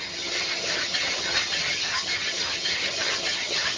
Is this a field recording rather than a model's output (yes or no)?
no